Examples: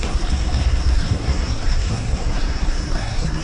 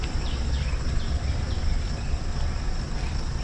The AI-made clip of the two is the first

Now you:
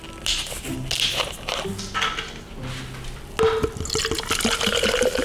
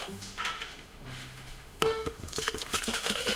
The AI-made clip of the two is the second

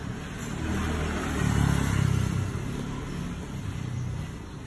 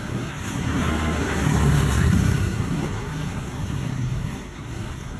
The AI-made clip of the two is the second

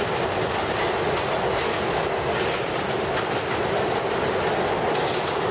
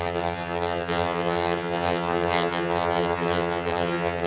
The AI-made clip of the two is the second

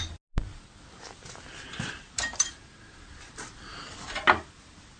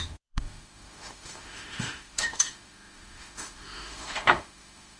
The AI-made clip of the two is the second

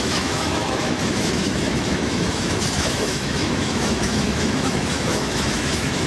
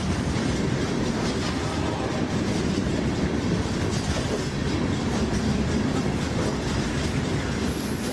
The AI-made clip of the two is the first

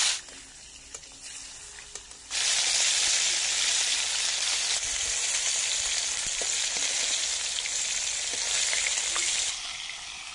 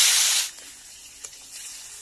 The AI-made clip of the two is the second